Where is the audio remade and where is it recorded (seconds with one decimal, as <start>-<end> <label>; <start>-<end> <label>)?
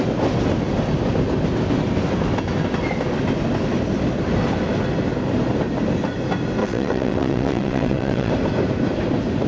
0.0-6.6 recorded; 6.6-8.3 remade; 8.3-9.5 recorded